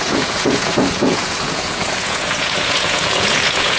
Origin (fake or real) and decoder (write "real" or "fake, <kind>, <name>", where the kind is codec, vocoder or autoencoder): fake, vocoder, Vocos